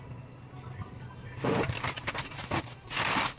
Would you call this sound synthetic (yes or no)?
yes